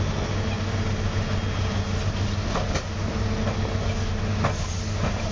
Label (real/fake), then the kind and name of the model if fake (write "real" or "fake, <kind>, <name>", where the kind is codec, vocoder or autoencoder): real